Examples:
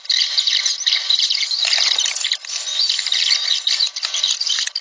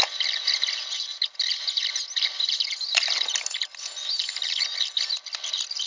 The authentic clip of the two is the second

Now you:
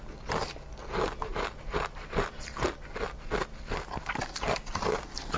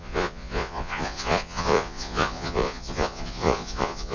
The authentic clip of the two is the first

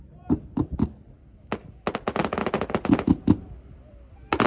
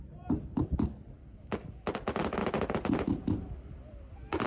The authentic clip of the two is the first